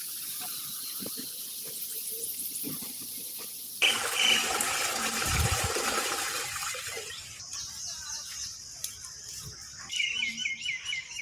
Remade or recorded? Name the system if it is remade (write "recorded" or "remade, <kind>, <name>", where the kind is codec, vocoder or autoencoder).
remade, vocoder, BigVGAN v2